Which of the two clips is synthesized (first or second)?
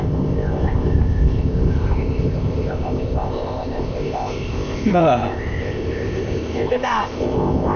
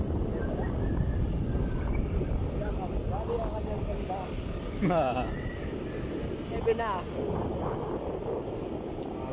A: first